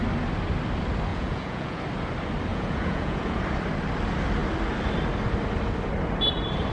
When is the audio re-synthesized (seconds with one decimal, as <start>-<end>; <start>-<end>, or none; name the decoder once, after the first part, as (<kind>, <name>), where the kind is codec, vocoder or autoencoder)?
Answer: 1.1-1.8 (vocoder, Vocos); 2.5-3.4